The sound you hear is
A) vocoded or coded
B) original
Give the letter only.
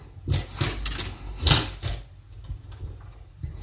B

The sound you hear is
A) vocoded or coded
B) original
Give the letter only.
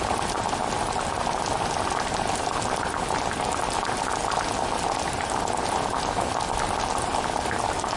B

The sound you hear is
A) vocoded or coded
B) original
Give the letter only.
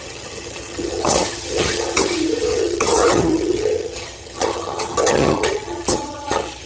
A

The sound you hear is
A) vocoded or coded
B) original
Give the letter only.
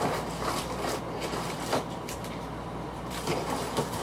A